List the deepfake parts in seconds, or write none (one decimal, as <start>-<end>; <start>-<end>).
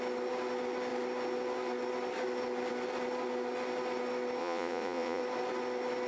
4.4-5.2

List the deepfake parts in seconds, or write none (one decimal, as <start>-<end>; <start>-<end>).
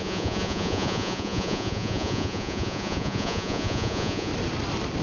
0.0-4.3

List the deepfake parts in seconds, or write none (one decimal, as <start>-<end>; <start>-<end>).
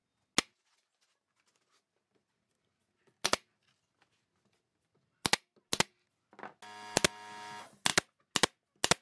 none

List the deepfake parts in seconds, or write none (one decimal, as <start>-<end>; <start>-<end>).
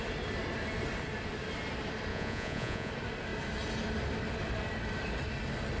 2.1-2.9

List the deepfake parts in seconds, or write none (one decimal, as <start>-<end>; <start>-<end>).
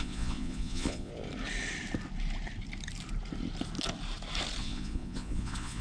0.0-1.1; 4.6-5.8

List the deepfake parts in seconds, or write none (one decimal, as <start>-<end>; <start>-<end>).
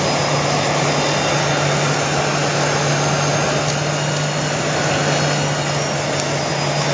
none